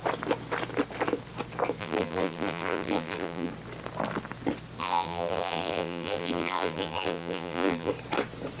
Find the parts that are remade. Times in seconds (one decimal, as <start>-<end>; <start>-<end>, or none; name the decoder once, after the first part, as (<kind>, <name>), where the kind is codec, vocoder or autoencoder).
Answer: 1.8-3.5 (vocoder, BigVGAN v2); 4.8-7.9